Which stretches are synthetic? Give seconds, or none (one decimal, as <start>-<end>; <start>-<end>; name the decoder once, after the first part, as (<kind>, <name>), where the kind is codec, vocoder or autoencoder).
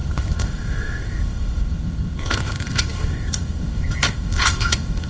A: 0.0-5.1 (codec, ZipCodec)